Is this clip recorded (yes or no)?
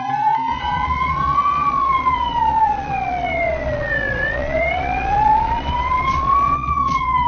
no